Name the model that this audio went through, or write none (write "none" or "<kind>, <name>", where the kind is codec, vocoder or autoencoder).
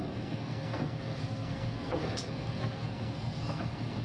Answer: codec, SNAC